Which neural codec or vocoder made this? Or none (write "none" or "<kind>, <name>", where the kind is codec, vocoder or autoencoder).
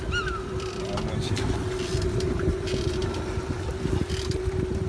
none